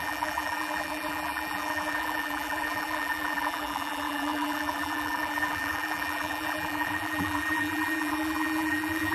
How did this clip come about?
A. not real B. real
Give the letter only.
A